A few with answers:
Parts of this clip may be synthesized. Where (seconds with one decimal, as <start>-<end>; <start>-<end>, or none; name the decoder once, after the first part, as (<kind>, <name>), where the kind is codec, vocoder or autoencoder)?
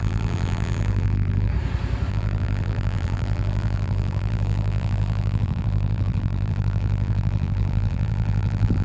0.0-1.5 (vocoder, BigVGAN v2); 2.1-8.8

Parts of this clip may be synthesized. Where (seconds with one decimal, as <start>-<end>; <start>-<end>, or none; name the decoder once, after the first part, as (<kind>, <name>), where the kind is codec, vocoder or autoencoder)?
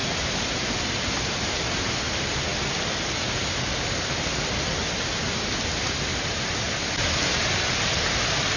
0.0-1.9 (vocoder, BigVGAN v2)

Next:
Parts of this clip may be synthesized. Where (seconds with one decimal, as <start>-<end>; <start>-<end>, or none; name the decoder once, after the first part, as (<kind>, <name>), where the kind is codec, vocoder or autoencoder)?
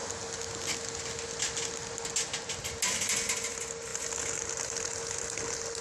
none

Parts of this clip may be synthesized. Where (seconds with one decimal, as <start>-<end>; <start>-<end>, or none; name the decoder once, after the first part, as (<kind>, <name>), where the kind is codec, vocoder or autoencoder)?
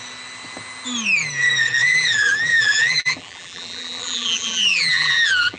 1.8-5.6 (vocoder, BigVGAN v2)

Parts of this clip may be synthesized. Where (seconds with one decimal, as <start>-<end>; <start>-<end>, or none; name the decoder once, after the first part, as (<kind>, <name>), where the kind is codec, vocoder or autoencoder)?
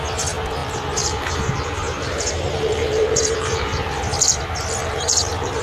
0.6-4.0 (vocoder, BigVGAN v2); 4.8-5.6